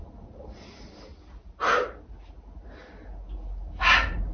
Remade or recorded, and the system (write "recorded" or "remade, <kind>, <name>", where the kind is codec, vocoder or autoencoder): recorded